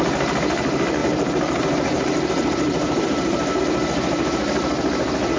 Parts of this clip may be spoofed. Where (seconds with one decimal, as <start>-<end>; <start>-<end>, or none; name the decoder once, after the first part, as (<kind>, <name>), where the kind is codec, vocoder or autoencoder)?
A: 1.0-3.6 (vocoder, BigVGAN v2)